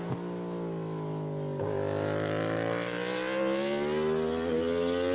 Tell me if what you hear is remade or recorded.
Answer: recorded